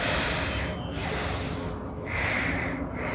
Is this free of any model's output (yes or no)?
yes